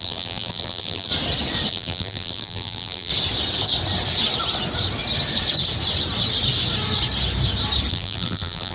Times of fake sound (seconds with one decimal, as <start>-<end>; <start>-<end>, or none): 0.0-1.1; 1.7-3.1; 7.9-8.7